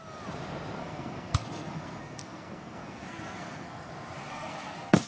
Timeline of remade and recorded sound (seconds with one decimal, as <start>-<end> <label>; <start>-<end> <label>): 0.0-0.8 recorded; 0.8-3.9 remade; 3.9-4.3 recorded; 4.3-5.1 remade